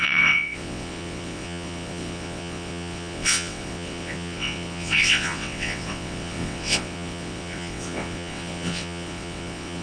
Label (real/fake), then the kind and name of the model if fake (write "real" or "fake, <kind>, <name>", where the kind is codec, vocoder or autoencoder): fake, vocoder, WaveNeXt